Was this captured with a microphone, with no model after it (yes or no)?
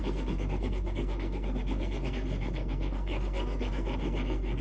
no